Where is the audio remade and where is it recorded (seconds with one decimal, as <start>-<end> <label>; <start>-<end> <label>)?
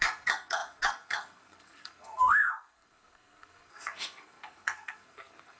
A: 0.0-5.6 remade